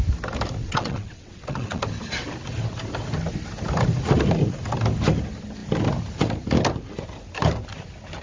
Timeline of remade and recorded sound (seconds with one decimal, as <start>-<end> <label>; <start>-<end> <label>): 0.0-0.6 recorded; 0.6-1.8 remade; 1.8-8.2 recorded